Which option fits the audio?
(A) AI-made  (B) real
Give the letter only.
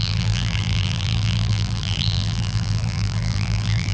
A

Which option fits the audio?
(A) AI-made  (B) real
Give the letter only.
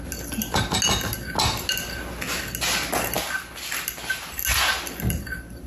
B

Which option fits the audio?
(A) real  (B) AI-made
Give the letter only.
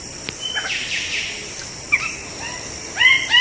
A